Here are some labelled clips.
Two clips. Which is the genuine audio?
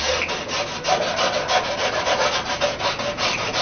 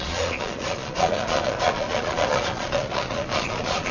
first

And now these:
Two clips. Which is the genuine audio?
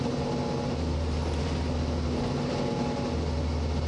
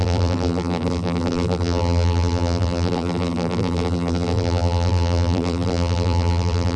first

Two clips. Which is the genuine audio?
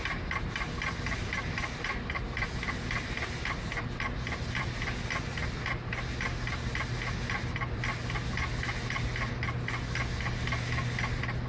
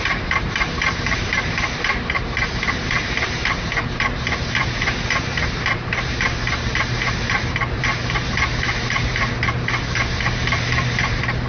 first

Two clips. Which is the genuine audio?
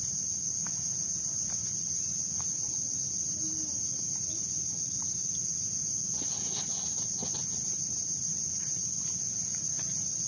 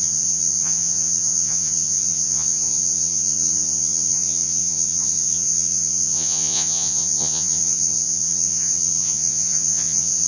first